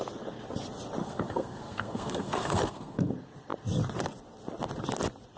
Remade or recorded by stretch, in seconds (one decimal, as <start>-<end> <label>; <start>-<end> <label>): 0.0-1.0 recorded; 1.0-3.1 remade; 3.1-5.4 recorded